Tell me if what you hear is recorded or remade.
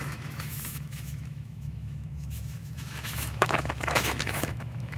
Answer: remade